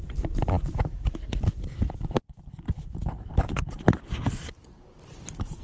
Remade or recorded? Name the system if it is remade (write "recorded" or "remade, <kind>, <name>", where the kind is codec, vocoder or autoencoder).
recorded